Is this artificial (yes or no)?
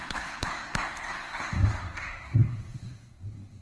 yes